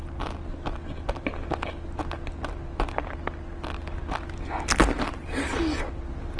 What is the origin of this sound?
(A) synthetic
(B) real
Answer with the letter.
B